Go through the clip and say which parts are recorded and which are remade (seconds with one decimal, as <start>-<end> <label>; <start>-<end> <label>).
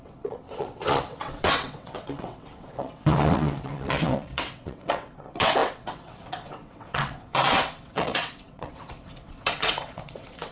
0.0-10.5 remade